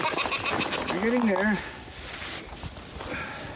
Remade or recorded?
recorded